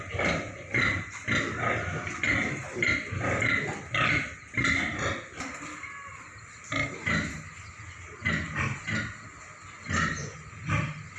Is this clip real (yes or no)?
no